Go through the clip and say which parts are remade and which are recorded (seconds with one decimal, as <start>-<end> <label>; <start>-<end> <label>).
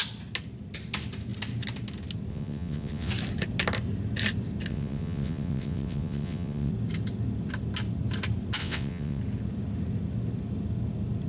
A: 0.0-2.3 recorded; 2.3-3.1 remade; 3.1-4.7 recorded; 4.7-6.7 remade; 6.7-8.6 recorded; 8.6-9.2 remade; 9.2-11.3 recorded